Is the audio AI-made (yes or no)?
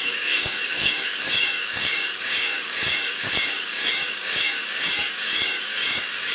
yes